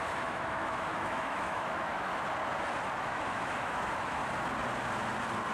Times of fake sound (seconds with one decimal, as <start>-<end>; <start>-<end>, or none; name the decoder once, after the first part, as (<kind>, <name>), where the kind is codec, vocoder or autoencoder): 0.0-2.1 (autoencoder, DAC-VAE); 3.0-4.2